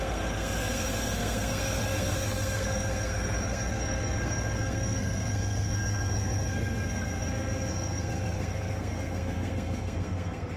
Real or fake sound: fake